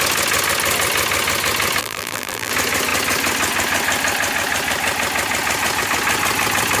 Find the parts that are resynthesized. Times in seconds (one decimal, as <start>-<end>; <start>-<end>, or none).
1.8-2.5